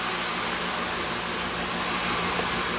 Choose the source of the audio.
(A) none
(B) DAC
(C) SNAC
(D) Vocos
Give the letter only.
A